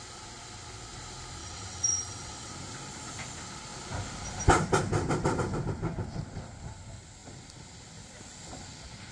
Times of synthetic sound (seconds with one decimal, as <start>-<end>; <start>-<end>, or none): 1.4-2.5

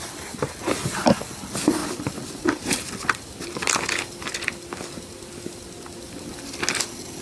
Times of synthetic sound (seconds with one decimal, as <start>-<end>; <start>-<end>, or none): none

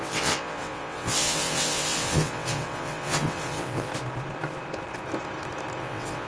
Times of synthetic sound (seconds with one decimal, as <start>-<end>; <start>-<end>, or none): 0.0-3.9; 5.8-6.3

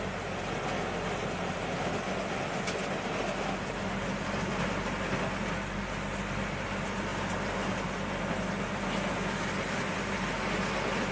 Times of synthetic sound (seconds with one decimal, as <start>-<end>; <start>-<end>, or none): none

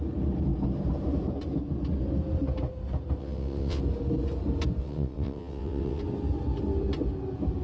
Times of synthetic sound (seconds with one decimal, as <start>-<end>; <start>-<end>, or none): 3.2-3.8; 4.8-6.0

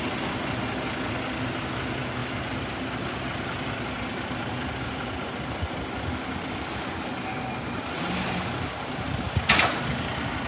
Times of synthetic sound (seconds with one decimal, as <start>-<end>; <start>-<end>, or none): none

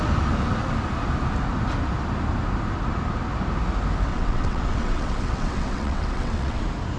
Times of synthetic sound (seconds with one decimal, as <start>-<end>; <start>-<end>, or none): 4.1-6.6

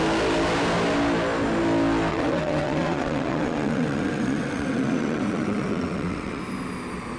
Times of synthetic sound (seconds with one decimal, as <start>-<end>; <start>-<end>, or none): 2.1-6.4